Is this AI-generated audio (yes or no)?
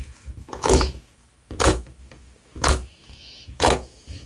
yes